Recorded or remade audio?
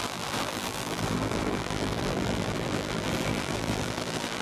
remade